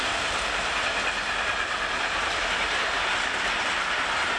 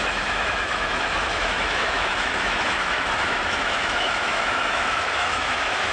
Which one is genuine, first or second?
first